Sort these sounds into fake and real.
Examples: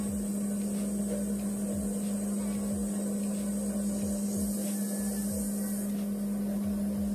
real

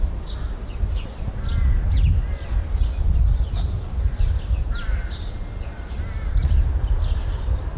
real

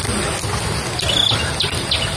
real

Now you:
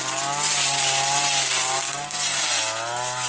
real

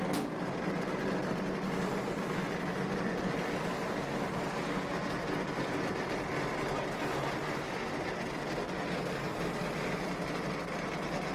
real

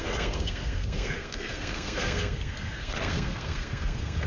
fake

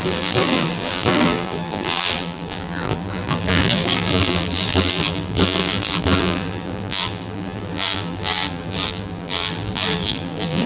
fake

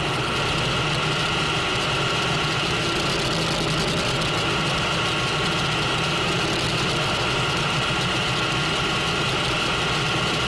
real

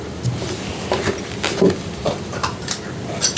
real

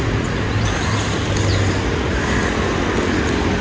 real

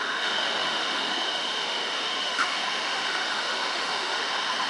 fake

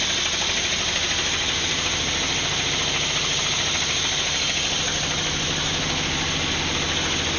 real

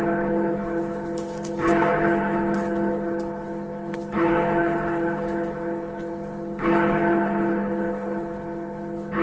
fake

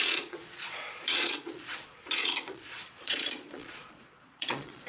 fake